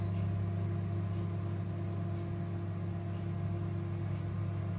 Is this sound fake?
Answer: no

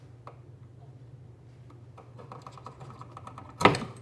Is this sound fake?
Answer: no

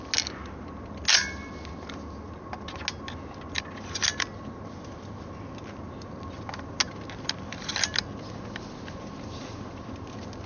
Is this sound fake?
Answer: no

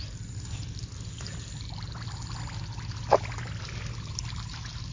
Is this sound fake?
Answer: no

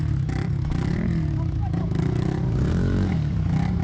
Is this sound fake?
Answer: yes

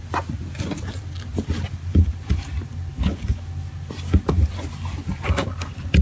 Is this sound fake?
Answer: no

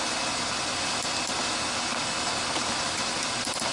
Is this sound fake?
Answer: no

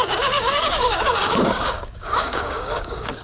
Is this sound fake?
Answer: yes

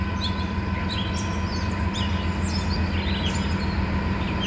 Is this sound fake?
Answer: no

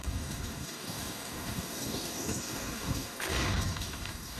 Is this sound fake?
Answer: yes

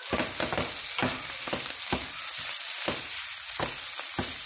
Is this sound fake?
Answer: no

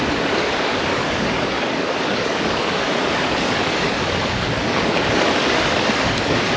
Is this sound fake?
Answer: yes